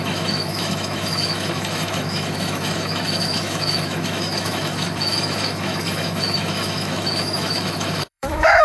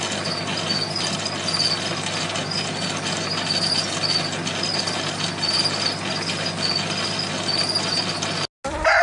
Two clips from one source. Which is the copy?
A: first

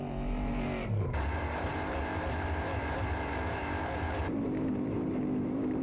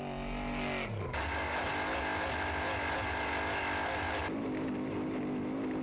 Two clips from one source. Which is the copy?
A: first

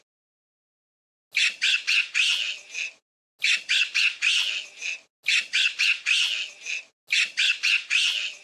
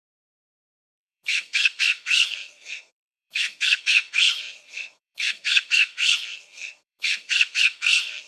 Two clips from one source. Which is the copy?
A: second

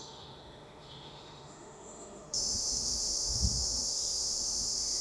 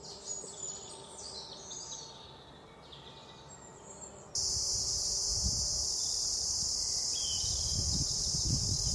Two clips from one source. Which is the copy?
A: first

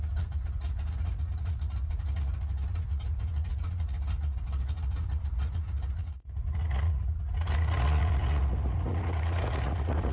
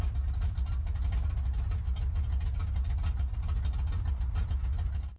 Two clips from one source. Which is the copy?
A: first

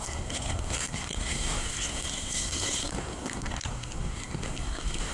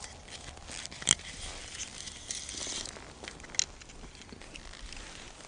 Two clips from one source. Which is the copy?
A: first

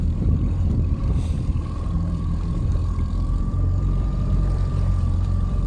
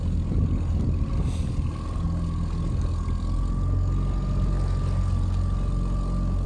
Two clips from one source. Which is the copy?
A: first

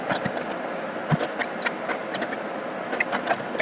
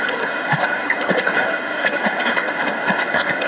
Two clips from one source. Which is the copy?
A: second